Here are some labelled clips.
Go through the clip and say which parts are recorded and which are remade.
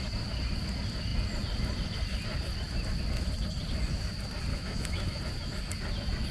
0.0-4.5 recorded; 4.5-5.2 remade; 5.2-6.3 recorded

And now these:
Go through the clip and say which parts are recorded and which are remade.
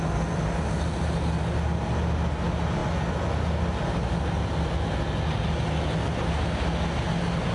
0.0-7.5 recorded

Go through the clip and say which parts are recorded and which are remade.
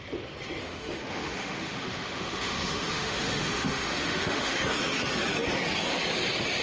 0.0-0.6 recorded; 0.6-4.6 remade; 4.6-6.6 recorded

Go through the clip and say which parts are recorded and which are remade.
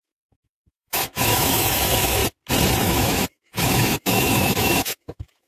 0.0-2.2 remade; 2.2-2.8 recorded; 2.8-5.5 remade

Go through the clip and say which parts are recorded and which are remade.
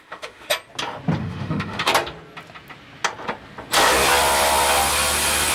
0.0-0.5 remade; 0.5-1.2 recorded; 1.2-1.9 remade; 1.9-5.5 recorded